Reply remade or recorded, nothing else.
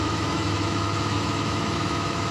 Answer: remade